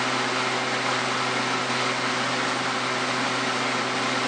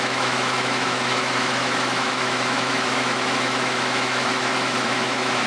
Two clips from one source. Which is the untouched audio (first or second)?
first